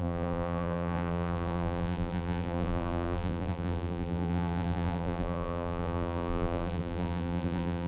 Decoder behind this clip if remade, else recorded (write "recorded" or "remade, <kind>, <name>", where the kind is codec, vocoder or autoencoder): remade, vocoder, BigVGAN v2